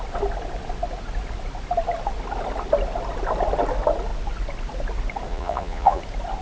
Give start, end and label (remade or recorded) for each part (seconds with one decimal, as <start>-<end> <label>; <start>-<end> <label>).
0.0-5.3 recorded; 5.3-6.0 remade; 6.0-6.4 recorded